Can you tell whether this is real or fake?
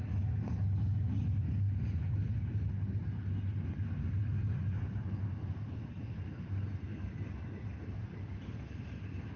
real